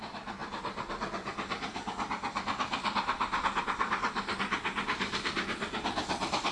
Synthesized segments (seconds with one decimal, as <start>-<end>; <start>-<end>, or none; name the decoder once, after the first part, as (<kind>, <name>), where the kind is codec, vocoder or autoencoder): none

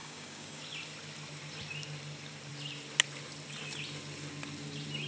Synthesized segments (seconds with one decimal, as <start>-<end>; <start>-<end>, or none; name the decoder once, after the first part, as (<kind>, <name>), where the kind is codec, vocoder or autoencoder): 0.0-0.6 (codec, DAC)

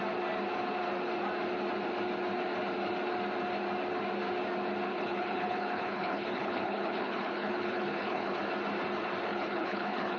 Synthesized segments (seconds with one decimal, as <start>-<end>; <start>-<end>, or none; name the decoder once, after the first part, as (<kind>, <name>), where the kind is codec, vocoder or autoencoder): 4.9-8.4 (codec, HILCodec); 9.3-10.2